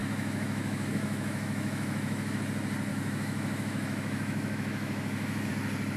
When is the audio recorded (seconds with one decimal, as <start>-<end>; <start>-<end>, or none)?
2.4-2.9; 5.5-6.0